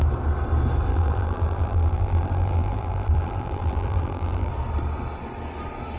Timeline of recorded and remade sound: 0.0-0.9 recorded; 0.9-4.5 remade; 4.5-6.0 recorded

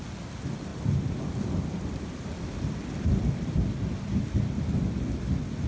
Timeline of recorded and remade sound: 0.0-0.7 recorded; 0.7-4.1 remade; 4.1-5.7 recorded

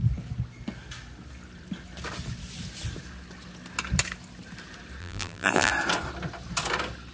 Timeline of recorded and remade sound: 0.0-5.0 recorded; 5.0-5.7 remade; 5.7-7.1 recorded

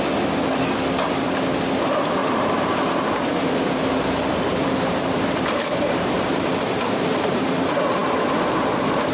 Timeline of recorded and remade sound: 0.0-2.2 recorded; 2.2-7.0 remade; 7.0-9.1 recorded